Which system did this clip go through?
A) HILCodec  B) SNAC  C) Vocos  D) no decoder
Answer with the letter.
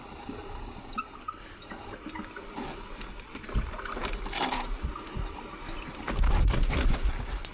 D